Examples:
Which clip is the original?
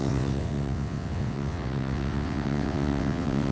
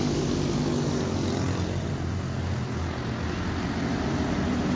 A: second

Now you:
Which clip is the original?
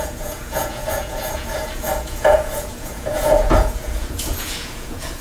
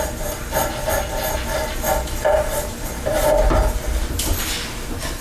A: second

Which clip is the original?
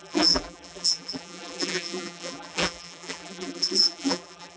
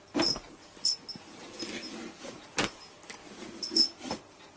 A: second